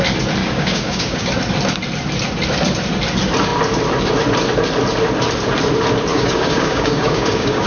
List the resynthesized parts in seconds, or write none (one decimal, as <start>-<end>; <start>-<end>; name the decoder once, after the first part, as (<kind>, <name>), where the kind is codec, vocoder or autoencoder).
0.4-1.3 (codec, DAC); 6.1-7.7